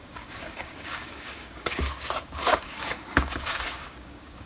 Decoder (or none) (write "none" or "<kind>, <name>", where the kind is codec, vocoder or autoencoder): codec, DAC